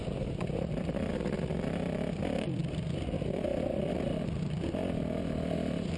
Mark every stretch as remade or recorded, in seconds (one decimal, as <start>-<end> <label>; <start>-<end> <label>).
0.0-6.0 recorded